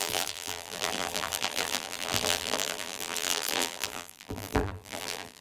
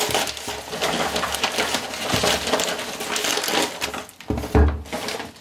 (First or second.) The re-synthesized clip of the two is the first